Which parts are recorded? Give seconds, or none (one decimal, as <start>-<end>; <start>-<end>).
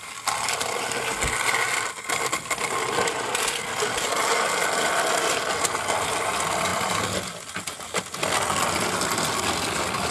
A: 0.0-10.1